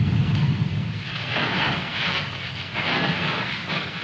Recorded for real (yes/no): no